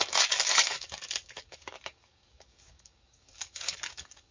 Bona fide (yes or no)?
no